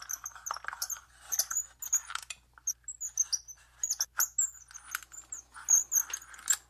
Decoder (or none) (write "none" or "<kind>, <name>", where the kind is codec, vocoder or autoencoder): none